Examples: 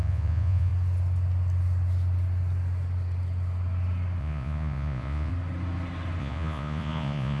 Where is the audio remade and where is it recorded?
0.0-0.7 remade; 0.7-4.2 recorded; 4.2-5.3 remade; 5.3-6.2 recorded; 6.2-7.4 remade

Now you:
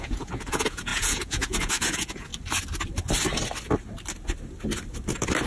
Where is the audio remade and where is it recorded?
0.0-2.3 remade; 2.3-5.5 recorded

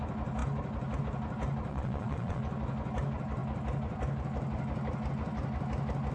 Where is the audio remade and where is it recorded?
0.0-1.7 recorded; 1.7-2.4 remade; 2.4-6.1 recorded

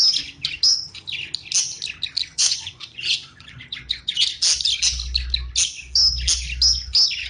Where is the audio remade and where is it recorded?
0.0-2.3 recorded; 2.3-4.2 remade; 4.2-7.3 recorded